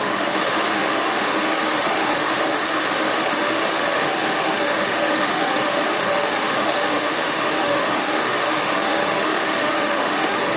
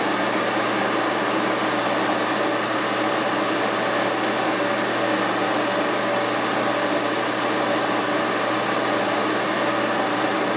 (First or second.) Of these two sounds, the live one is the second